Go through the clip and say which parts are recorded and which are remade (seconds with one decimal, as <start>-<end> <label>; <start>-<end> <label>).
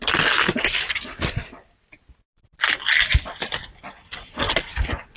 0.0-5.2 recorded